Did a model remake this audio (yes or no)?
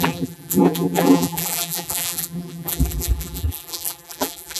yes